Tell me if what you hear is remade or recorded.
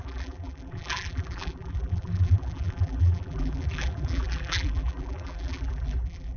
remade